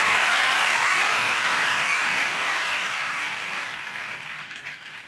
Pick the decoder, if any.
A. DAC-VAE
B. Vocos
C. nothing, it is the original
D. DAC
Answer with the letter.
D